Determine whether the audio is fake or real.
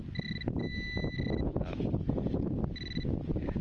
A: real